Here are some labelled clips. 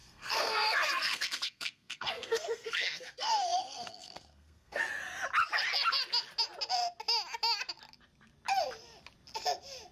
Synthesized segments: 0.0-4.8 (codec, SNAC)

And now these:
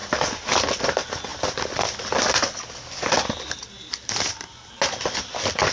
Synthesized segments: 1.3-4.7 (vocoder, BigVGAN v2)

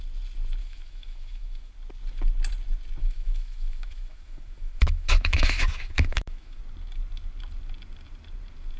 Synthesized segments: 0.6-1.7 (autoencoder, DAC-VAE); 3.0-6.6